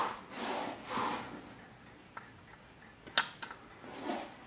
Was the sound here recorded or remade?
recorded